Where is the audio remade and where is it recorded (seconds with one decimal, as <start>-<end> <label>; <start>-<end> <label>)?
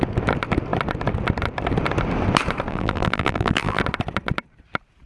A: 0.0-2.7 recorded; 2.7-3.8 remade; 3.8-5.1 recorded